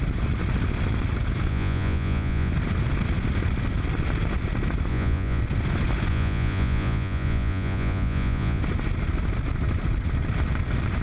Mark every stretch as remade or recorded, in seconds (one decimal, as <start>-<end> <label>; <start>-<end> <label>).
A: 0.0-1.5 recorded; 1.5-2.5 remade; 2.5-4.9 recorded; 4.9-5.4 remade; 5.4-6.1 recorded; 6.1-8.6 remade; 8.6-11.0 recorded